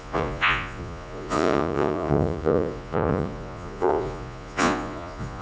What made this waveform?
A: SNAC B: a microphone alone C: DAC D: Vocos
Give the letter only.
D